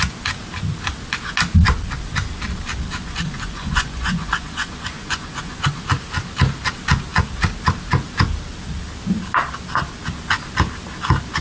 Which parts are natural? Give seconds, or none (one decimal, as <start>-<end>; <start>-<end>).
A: 0.0-3.0; 5.8-11.4